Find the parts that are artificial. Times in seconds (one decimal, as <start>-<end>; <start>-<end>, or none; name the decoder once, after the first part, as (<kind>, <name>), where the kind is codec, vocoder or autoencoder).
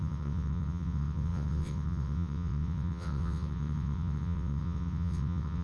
0.0-5.6 (vocoder, WaveNeXt)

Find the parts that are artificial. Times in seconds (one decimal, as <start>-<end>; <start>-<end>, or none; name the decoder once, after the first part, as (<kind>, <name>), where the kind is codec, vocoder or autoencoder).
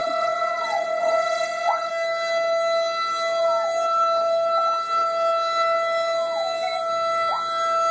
0.0-1.9 (vocoder, WaveNeXt)